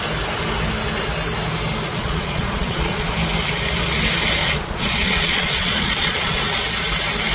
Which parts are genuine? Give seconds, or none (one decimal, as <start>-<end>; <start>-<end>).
0.0-1.9; 3.1-4.4; 6.4-7.3